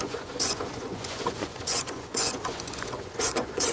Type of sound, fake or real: fake